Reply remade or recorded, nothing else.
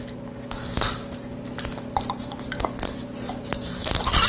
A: recorded